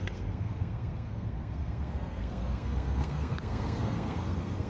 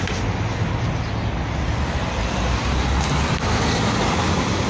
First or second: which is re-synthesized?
first